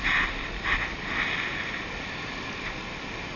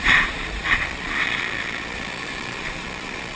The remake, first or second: second